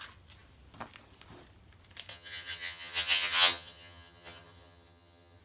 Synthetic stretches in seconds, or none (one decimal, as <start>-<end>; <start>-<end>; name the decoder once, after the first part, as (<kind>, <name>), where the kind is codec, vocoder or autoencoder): 2.1-5.4 (vocoder, HiFi-GAN)